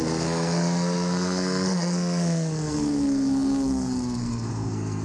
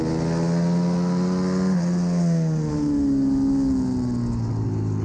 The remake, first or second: first